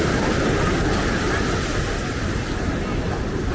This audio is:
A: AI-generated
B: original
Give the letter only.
B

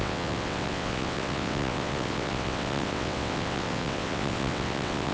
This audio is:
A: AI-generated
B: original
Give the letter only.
A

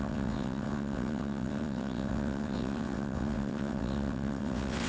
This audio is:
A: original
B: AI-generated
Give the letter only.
B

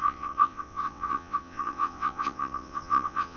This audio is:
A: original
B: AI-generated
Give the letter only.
B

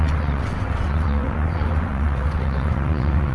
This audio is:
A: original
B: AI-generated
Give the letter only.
B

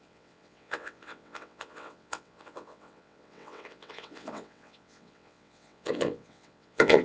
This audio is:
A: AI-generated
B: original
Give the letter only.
A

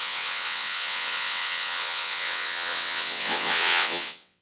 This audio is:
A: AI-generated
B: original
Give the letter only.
A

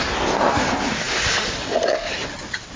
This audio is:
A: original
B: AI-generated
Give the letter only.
A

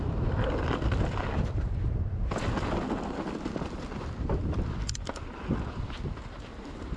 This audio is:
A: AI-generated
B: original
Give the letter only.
B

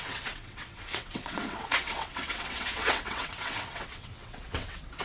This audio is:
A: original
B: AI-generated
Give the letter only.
B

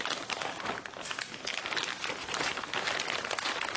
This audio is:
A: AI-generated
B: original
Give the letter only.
B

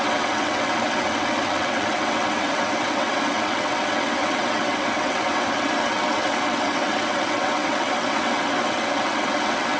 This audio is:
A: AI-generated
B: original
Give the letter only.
A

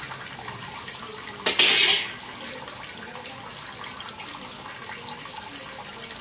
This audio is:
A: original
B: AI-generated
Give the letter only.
A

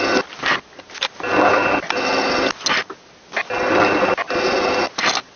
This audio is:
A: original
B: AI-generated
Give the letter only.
A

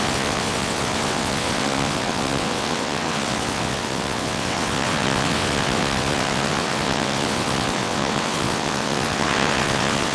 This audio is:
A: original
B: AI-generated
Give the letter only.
B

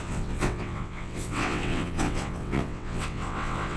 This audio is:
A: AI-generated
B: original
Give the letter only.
A